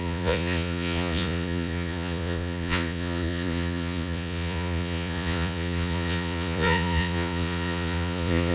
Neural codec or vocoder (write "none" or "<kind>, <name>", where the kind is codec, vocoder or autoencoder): vocoder, Vocos